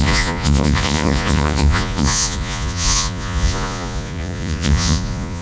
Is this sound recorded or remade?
remade